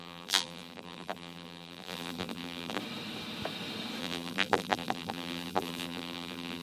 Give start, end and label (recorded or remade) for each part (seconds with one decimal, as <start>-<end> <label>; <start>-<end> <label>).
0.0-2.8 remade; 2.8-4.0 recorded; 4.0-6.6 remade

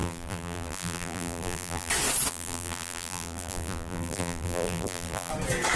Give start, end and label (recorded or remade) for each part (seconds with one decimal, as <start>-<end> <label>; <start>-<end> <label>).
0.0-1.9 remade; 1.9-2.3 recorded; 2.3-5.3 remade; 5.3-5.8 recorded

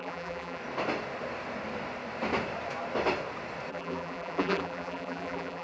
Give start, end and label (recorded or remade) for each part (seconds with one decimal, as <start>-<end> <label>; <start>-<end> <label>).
0.0-0.6 remade; 0.6-3.7 recorded; 3.7-5.6 remade

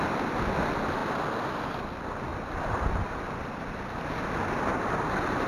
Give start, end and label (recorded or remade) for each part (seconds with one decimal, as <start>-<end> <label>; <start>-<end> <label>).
0.0-1.0 recorded; 1.0-1.8 remade; 1.8-2.3 recorded; 2.3-5.5 remade